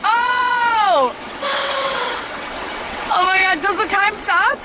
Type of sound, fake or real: fake